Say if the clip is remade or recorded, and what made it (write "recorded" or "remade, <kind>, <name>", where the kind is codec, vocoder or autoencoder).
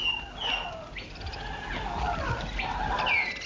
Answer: recorded